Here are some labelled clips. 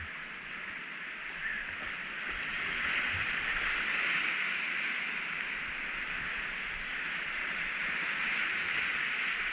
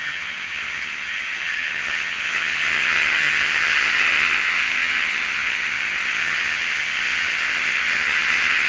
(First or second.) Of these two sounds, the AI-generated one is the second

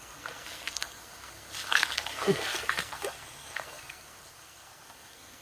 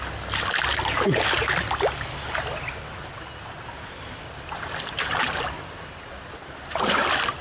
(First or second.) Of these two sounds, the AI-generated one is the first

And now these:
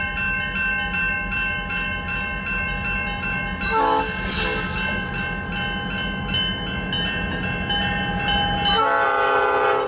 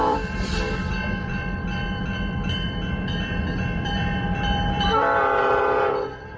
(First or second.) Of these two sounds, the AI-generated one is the second